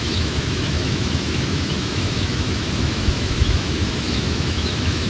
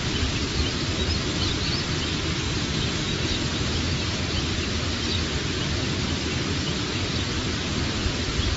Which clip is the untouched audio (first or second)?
second